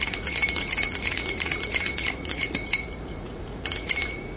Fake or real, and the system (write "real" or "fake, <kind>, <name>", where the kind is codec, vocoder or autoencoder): fake, vocoder, Vocos